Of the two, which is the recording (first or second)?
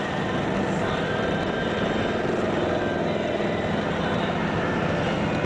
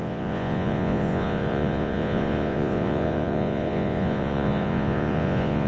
first